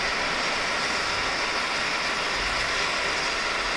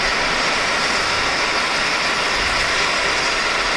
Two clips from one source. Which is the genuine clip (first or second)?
first